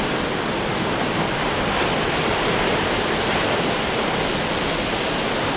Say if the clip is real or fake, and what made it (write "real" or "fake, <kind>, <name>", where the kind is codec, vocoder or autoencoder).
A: real